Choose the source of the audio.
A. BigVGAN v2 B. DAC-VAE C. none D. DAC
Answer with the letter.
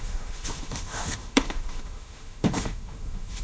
B